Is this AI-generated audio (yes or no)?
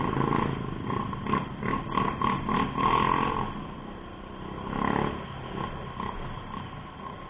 no